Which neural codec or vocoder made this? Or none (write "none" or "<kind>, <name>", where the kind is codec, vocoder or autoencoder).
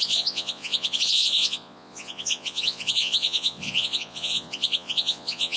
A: vocoder, Vocos